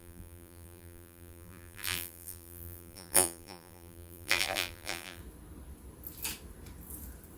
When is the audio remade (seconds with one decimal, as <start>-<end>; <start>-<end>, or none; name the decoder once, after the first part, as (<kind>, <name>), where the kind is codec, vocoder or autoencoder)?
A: 0.0-5.2 (vocoder, BigVGAN v2)